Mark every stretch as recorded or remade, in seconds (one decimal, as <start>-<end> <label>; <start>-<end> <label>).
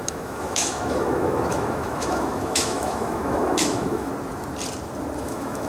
0.0-4.1 remade; 4.1-5.2 recorded; 5.2-5.7 remade